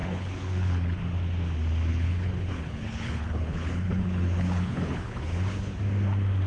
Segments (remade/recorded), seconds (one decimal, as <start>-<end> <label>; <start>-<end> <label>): 0.0-1.0 remade; 1.0-1.9 recorded; 1.9-5.8 remade; 5.8-6.5 recorded